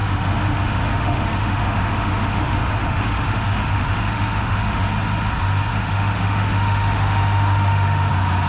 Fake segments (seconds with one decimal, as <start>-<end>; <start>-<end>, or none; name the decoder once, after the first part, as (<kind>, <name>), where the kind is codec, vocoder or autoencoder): 0.0-4.9 (autoencoder, DAC-VAE); 5.7-8.1